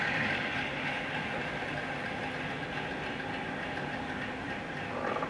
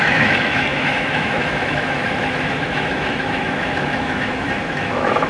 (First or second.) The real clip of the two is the first